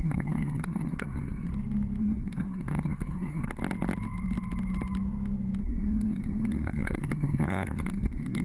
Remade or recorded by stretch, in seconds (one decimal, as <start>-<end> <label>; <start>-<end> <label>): 0.0-1.5 remade; 1.5-2.0 recorded; 2.0-3.6 remade; 3.6-5.6 recorded; 5.6-8.4 remade

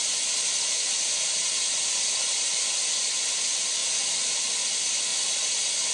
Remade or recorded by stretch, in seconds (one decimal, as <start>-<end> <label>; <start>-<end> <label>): 0.0-5.1 recorded; 5.1-5.9 remade